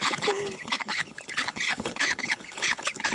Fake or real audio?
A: fake